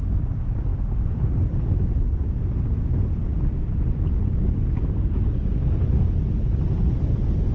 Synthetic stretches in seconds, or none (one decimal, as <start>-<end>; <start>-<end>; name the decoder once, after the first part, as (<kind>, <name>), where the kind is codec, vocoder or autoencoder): none